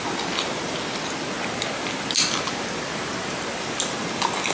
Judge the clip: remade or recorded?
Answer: recorded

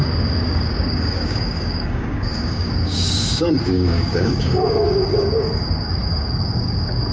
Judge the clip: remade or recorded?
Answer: remade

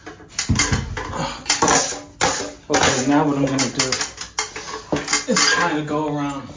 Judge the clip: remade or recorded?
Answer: recorded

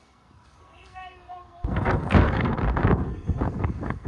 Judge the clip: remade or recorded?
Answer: remade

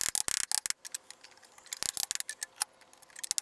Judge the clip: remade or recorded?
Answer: recorded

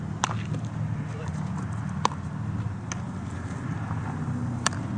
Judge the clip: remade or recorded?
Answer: recorded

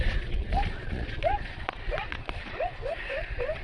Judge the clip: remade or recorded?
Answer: remade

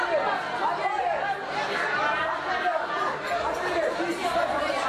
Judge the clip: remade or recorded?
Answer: recorded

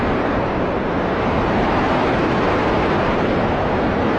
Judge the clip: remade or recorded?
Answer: remade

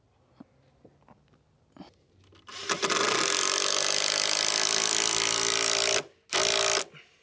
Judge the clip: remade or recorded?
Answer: recorded